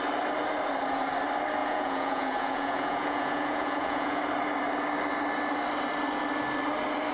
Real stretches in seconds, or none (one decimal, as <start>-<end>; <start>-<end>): 0.0-1.6; 4.2-7.1

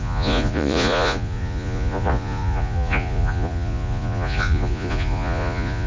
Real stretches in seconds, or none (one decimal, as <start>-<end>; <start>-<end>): none